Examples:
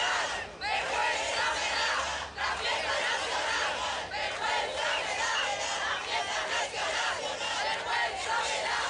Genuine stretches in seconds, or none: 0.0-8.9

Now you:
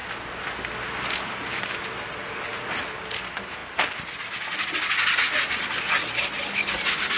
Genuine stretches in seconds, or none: 0.0-7.2

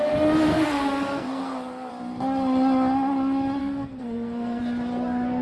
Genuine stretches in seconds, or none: 0.0-0.5; 1.9-3.6; 4.6-5.4